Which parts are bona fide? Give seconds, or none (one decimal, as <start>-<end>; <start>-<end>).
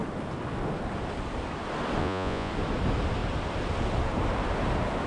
0.0-2.0; 2.5-5.1